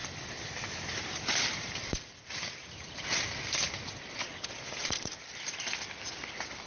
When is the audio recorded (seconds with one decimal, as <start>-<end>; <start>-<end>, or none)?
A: 4.0-6.7